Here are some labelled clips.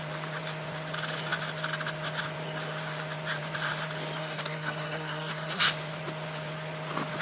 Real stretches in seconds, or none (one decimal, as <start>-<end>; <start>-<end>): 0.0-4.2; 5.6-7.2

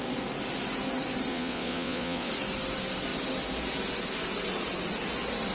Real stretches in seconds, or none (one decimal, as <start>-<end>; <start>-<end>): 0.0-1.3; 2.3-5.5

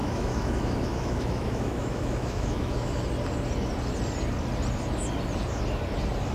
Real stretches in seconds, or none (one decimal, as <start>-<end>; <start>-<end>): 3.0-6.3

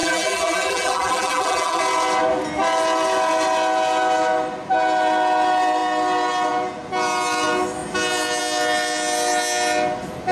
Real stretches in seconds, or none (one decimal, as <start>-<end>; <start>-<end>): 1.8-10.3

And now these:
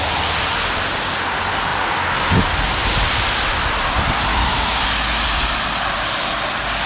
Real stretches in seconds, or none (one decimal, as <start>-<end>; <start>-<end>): 0.0-4.3; 4.8-6.9

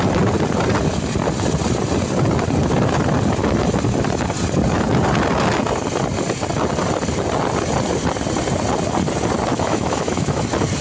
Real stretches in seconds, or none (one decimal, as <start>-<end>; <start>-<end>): 0.0-9.5; 10.4-10.8

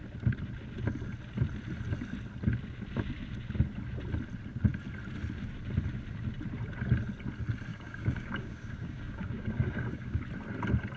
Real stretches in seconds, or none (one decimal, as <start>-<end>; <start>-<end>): 0.0-7.7; 10.2-11.0